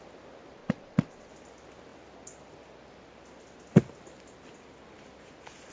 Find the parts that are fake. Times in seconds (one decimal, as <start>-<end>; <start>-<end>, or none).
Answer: 0.6-1.3